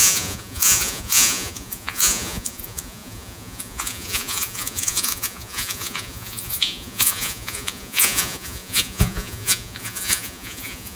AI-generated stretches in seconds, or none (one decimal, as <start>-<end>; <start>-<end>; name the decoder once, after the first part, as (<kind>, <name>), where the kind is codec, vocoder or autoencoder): 0.0-11.0 (vocoder, Vocos)